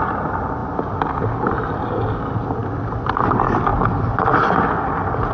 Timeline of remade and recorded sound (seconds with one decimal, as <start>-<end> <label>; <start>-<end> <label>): 0.0-5.3 recorded